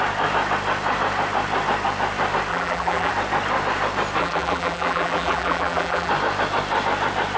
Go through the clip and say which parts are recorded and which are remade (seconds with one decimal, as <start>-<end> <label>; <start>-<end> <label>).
0.0-2.5 recorded; 2.5-3.1 remade; 3.1-4.2 recorded; 4.2-6.1 remade; 6.1-7.4 recorded